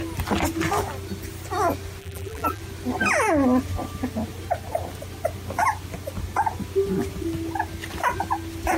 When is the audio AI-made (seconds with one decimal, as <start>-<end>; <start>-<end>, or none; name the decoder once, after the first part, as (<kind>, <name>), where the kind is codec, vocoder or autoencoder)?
2.0-2.6 (vocoder, BigVGAN v2)